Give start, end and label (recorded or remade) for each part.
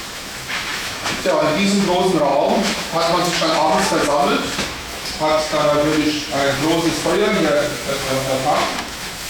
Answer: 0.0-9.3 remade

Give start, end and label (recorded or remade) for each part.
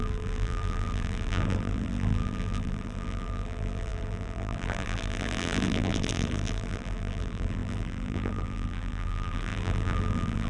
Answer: 0.0-10.5 remade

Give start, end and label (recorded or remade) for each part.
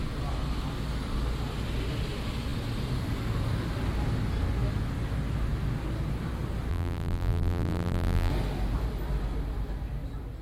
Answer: 0.0-6.7 recorded; 6.7-8.3 remade; 8.3-10.4 recorded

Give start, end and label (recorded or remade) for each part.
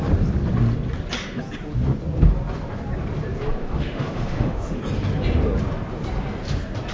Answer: 0.0-3.6 recorded; 3.6-4.8 remade; 4.8-6.9 recorded